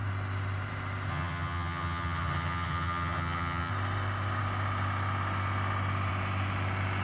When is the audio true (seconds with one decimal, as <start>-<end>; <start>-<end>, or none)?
0.0-1.1; 3.7-7.0